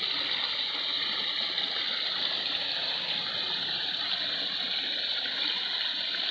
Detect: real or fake real